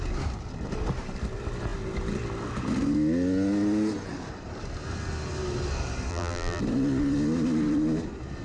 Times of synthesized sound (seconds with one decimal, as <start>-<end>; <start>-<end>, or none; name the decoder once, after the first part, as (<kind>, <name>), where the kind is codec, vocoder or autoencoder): 6.1-6.6 (vocoder, BigVGAN v2)